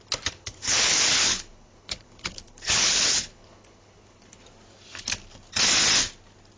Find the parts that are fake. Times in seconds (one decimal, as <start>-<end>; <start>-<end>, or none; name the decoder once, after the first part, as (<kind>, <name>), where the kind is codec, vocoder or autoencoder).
0.4-4.4 (codec, HILCodec)